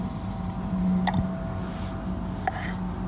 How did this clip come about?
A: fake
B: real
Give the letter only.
B